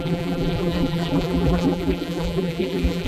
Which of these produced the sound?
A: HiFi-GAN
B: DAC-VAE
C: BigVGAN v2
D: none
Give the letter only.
C